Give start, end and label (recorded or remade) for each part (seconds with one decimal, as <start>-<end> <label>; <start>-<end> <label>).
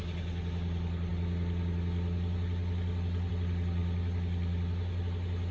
0.0-5.5 recorded